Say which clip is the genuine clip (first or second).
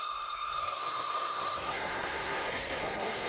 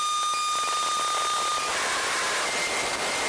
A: second